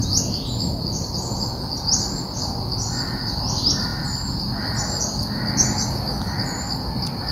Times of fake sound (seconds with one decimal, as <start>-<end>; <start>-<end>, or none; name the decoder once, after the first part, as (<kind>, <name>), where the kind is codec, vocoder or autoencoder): 0.0-2.1 (vocoder, BigVGAN v2); 3.9-4.6